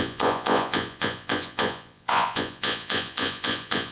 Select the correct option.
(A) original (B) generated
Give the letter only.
B